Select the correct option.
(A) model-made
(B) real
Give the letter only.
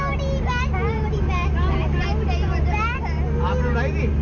B